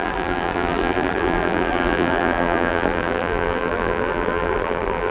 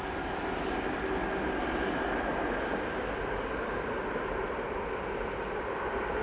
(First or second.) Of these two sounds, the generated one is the first